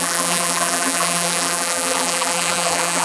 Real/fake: fake